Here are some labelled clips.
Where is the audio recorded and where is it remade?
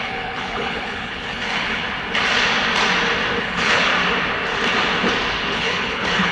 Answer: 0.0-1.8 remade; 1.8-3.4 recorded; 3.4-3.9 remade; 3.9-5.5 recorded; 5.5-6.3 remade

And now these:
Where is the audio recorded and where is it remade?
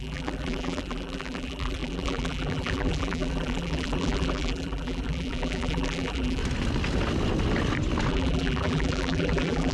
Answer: 0.0-6.4 remade; 6.4-8.1 recorded; 8.1-9.7 remade